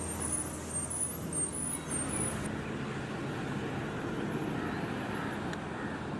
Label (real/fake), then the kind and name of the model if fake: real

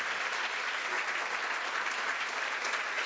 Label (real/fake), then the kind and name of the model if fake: real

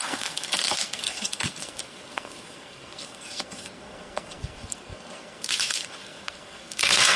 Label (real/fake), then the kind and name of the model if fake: fake, codec, SNAC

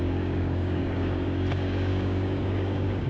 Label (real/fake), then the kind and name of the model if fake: fake, codec, DAC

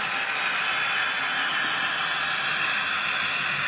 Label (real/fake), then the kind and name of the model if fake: real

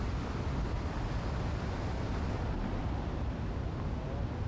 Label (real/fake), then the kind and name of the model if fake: real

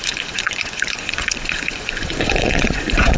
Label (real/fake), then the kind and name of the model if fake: fake, vocoder, Vocos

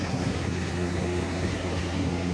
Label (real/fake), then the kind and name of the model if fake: fake, codec, SNAC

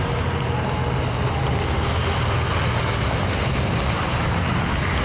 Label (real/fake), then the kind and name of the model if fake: real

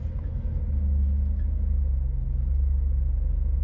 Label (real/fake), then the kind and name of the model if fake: real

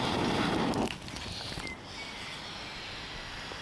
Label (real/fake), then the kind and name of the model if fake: real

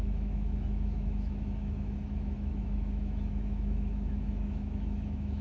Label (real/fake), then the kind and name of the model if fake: fake, autoencoder, DAC-VAE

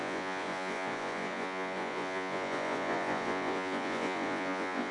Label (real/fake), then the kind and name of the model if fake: fake, vocoder, Vocos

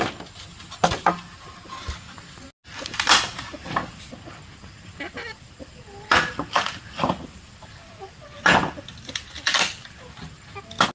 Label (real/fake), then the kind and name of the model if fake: real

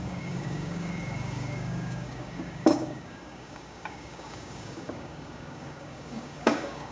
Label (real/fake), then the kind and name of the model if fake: fake, codec, DAC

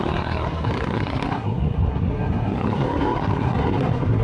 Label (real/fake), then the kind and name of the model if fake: fake, codec, SNAC